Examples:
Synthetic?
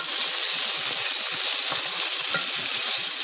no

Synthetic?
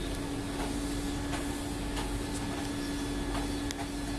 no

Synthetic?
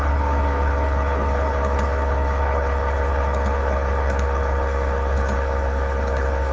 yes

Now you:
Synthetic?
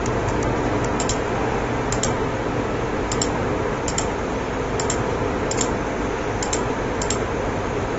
no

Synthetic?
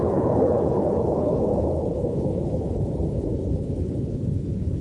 yes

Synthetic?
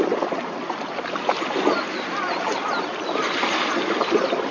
no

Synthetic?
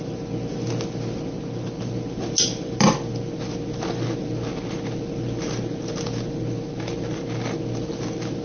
no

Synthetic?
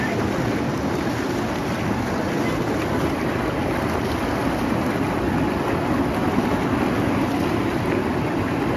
no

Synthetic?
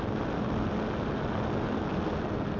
no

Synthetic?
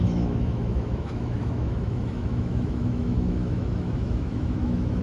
yes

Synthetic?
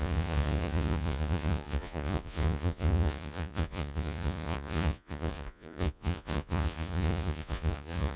yes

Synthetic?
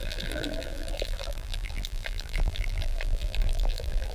yes